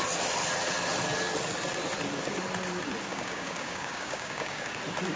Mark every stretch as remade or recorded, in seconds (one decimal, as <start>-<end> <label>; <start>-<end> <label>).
0.0-3.1 recorded; 3.1-4.7 remade; 4.7-5.2 recorded